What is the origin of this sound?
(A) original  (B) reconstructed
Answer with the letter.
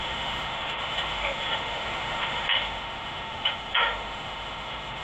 B